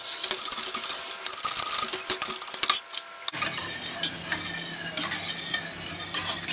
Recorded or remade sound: recorded